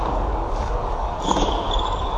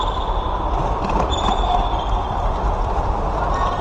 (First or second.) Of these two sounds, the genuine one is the second